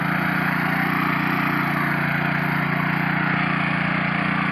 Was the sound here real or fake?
real